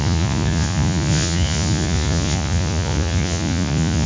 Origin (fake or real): fake